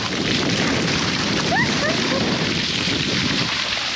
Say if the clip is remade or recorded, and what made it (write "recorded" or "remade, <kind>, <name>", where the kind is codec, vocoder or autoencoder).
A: remade, vocoder, BigVGAN v2